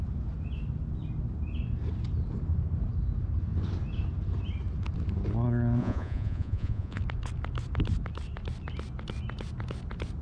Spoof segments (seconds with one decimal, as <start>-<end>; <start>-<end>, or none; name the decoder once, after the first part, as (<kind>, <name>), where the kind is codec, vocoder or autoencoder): 5.8-7.0 (vocoder, Vocos)